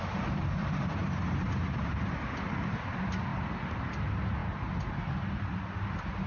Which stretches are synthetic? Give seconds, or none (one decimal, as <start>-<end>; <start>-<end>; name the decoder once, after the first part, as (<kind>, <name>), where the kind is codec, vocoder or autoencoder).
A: 0.6-2.8 (vocoder, BigVGAN v2); 3.3-3.8